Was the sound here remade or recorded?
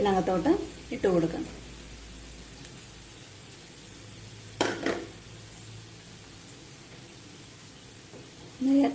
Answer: recorded